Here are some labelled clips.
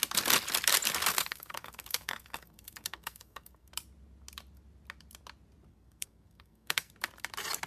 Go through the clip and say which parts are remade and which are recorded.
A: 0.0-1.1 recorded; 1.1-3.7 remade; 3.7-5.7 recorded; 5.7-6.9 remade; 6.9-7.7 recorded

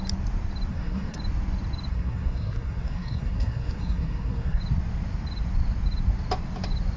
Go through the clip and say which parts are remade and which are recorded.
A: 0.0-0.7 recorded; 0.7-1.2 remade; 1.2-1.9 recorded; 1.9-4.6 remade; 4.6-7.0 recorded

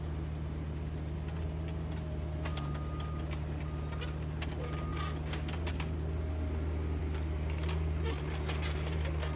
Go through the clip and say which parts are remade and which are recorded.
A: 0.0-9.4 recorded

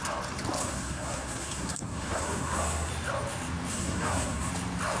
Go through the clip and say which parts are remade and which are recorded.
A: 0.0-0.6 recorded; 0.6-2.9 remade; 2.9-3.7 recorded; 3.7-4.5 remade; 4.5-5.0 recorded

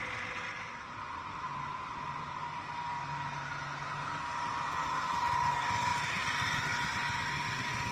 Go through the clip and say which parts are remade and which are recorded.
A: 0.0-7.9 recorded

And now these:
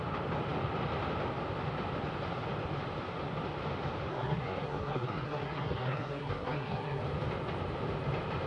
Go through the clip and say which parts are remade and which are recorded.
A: 0.0-4.1 recorded; 4.1-7.0 remade; 7.0-8.5 recorded

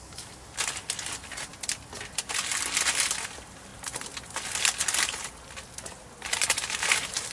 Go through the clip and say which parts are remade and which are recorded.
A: 0.0-7.3 recorded